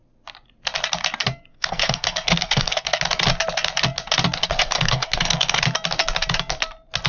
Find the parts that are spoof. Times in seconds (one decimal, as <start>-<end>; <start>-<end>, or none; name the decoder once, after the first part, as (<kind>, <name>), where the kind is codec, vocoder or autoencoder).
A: 1.5-3.0 (codec, SNAC); 4.4-5.6